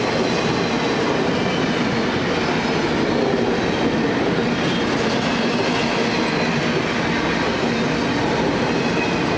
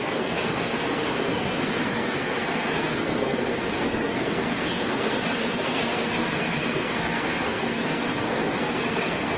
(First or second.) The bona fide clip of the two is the first